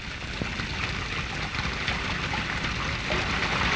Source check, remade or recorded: recorded